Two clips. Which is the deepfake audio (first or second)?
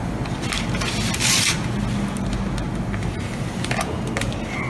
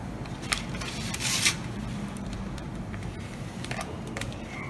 second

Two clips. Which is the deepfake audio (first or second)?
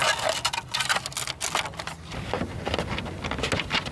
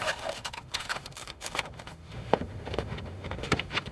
second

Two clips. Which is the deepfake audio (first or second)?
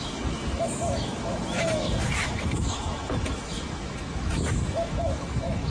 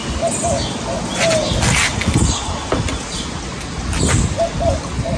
first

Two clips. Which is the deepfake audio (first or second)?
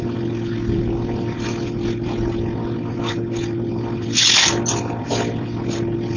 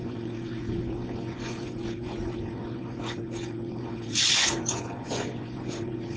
second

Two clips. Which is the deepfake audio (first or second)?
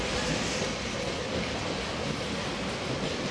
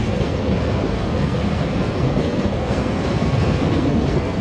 second